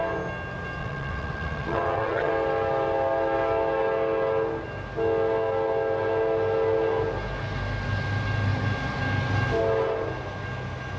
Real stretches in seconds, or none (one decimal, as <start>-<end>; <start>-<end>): 0.0-0.8; 2.3-11.0